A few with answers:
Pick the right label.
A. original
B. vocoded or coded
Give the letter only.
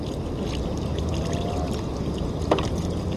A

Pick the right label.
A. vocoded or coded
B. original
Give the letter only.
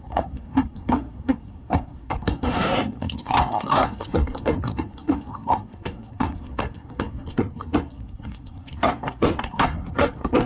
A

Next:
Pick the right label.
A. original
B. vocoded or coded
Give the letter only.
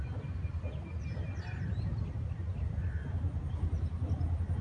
A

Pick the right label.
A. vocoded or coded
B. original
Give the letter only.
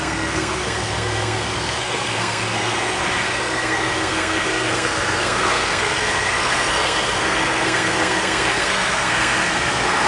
A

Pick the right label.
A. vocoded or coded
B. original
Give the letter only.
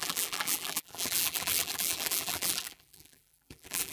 A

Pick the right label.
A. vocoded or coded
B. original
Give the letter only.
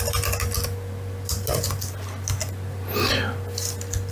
B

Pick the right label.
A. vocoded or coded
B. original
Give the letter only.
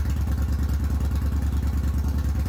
B